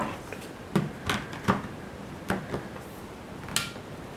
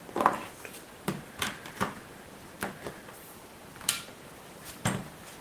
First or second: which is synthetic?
second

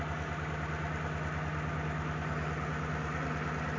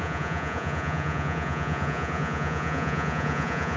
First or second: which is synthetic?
second